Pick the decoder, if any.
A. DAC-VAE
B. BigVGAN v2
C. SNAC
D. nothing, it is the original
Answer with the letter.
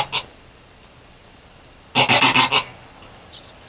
D